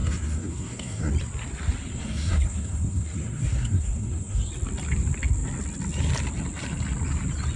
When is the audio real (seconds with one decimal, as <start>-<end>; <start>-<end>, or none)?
1.1-1.9; 4.5-7.6